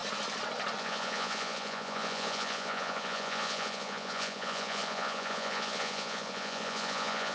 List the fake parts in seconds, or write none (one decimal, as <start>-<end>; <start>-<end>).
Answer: 0.8-7.3